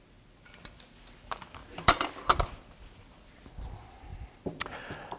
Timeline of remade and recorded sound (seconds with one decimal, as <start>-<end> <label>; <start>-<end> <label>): 0.0-1.6 recorded; 1.6-3.3 remade; 3.3-4.1 recorded; 4.1-5.2 remade